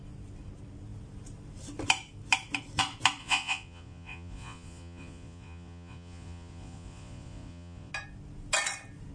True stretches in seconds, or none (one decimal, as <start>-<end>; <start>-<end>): 0.0-3.2; 7.9-9.1